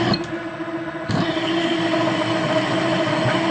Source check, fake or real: real